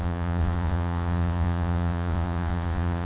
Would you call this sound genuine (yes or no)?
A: no